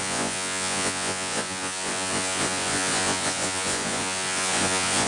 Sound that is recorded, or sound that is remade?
remade